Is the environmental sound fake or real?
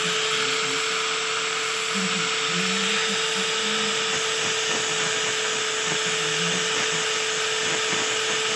real